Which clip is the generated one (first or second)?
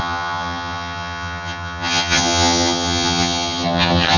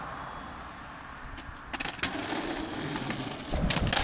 first